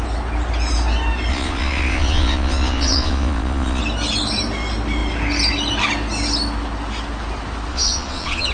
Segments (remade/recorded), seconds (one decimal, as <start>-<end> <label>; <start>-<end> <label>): 0.0-1.3 recorded; 1.3-3.8 remade; 3.8-7.7 recorded; 7.7-8.5 remade